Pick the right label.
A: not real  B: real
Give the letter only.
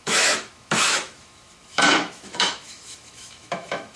A